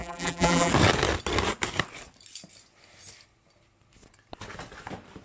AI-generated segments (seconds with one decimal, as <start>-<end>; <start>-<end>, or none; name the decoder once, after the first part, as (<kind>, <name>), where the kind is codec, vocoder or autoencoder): 0.0-0.7 (vocoder, BigVGAN v2)